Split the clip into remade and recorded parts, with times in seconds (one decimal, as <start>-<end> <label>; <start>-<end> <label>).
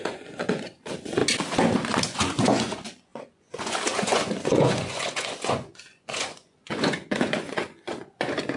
0.0-1.2 remade; 1.2-2.0 recorded; 2.0-8.6 remade